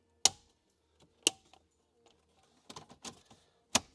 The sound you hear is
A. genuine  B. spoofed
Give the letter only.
A